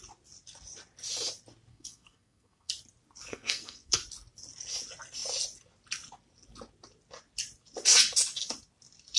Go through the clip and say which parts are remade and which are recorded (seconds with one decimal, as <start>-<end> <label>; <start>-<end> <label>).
0.0-1.7 recorded; 1.7-2.7 remade; 2.7-3.3 recorded; 3.3-4.0 remade; 4.0-9.2 recorded